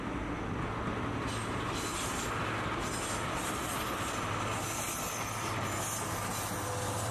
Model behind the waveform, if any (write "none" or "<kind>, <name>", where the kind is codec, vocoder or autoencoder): none